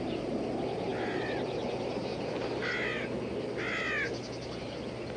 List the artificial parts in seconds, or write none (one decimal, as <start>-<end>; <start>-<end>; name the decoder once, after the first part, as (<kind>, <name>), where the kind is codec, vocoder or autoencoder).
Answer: none

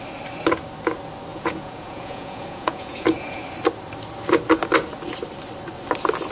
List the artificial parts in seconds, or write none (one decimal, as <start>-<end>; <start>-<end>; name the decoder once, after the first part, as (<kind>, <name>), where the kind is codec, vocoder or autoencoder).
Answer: 1.3-3.4 (vocoder, Vocos)

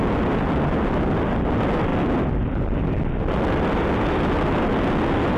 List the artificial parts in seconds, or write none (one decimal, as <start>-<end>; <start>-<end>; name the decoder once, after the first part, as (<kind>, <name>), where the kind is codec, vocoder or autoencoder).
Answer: none

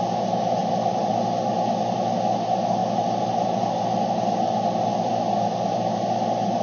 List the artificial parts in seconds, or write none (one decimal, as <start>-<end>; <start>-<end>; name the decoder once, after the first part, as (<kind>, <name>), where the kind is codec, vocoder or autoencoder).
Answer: 0.6-1.1 (vocoder, BigVGAN v2)

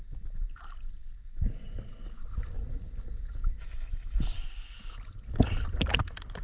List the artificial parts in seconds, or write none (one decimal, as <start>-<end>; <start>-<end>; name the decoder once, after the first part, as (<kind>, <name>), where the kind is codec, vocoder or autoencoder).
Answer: none